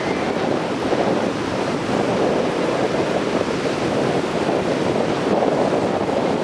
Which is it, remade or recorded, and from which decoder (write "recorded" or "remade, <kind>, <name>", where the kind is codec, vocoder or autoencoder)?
recorded